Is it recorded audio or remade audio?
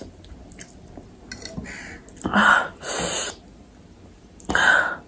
recorded